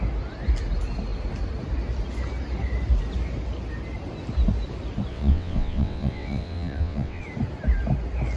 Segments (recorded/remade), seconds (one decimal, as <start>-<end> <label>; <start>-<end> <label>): 0.0-5.1 recorded; 5.1-7.2 remade; 7.2-8.4 recorded